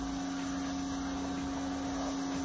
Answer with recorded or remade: recorded